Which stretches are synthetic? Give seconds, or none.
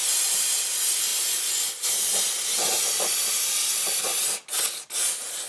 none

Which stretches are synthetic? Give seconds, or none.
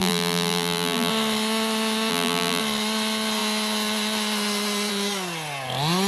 0.0-1.1 (vocoder, BigVGAN v2); 2.1-2.6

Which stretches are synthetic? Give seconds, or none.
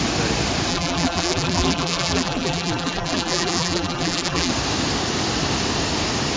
0.7-4.5 (vocoder, BigVGAN v2)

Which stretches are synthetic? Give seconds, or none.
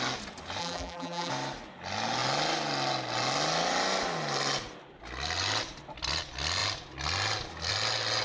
0.6-1.3 (vocoder, BigVGAN v2)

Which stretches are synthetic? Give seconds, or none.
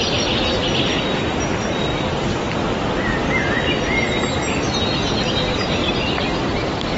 1.9-2.6 (vocoder, BigVGAN v2); 5.8-7.0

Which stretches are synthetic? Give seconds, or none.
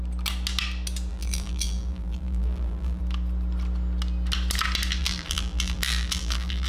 1.1-3.0 (vocoder, BigVGAN v2); 5.0-6.7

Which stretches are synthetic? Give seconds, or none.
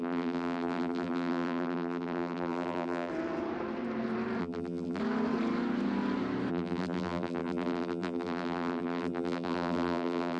0.0-3.1 (vocoder, BigVGAN v2); 4.4-5.0; 6.5-10.4